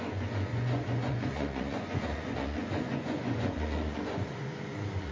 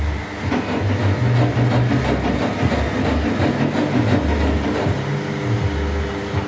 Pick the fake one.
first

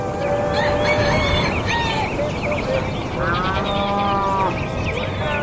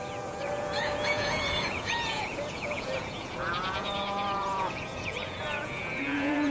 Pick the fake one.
second